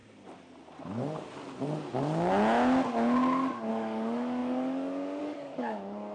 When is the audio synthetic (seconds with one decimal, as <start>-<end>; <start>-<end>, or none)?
3.7-6.1